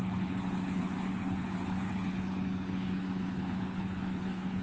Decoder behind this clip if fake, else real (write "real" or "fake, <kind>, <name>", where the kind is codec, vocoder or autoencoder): fake, codec, HILCodec